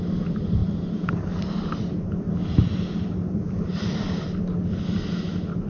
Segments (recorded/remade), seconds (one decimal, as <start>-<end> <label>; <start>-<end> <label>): 0.0-0.6 recorded; 0.6-2.3 remade; 2.3-5.7 recorded